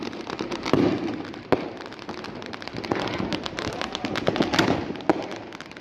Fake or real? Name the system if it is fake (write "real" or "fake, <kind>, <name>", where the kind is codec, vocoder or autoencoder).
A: real